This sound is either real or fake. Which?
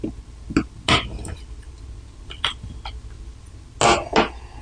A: real